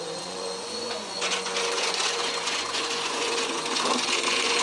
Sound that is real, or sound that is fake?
fake